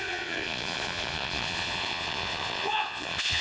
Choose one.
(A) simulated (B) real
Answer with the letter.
A